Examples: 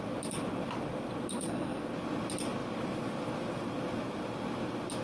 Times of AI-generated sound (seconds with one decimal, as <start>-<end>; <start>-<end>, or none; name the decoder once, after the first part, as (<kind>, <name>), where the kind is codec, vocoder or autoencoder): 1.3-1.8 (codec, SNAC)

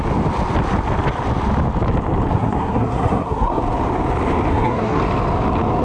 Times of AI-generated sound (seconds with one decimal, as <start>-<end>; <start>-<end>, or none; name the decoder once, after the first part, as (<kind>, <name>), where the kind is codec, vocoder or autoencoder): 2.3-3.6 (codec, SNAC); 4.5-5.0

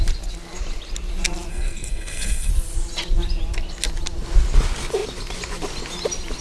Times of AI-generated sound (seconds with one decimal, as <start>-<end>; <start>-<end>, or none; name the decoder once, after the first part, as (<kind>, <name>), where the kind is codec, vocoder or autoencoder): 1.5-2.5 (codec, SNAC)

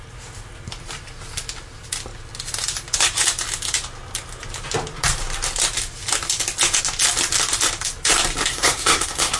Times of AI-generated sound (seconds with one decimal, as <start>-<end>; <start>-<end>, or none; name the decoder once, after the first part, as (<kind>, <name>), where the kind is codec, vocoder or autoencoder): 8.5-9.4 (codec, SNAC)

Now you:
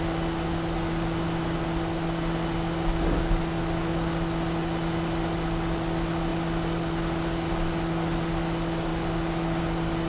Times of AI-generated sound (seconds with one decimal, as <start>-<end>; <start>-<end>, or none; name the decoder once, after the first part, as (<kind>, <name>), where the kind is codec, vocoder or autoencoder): none

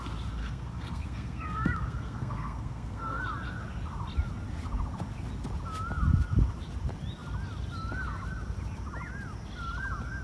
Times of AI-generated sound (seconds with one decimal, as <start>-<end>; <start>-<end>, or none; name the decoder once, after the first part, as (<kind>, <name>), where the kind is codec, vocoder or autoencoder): 0.4-3.2 (codec, SNAC)

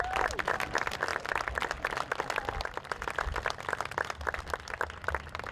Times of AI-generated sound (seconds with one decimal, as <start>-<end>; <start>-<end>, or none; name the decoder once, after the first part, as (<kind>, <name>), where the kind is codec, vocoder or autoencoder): none